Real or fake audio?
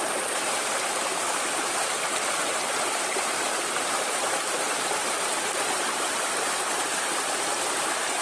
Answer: fake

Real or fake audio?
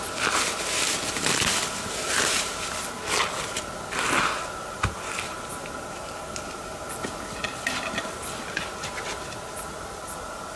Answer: real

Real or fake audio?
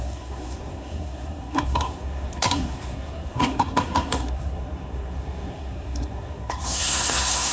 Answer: fake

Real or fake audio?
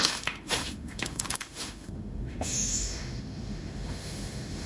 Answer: fake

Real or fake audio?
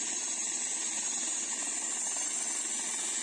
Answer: real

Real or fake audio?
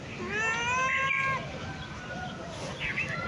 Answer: real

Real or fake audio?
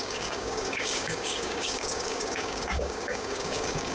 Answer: fake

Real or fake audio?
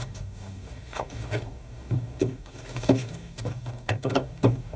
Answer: fake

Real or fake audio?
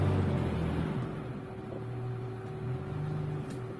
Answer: real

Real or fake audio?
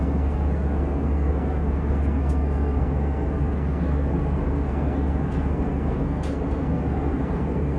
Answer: fake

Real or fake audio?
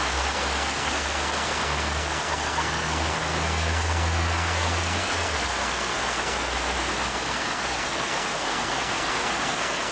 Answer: fake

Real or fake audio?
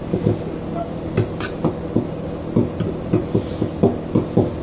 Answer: real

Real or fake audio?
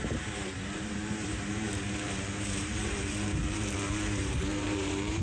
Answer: fake